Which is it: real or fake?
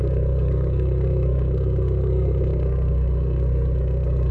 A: fake